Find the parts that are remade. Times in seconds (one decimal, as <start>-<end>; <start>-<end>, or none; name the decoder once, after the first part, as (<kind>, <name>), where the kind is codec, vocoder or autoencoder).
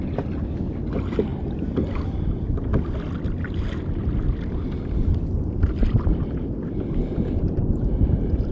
7.0-7.6 (vocoder, BigVGAN v2)